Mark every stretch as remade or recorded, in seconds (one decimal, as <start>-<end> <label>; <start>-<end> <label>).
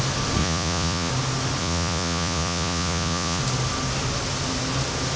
0.0-0.4 recorded; 0.4-1.1 remade; 1.1-1.6 recorded; 1.6-3.4 remade; 3.4-5.2 recorded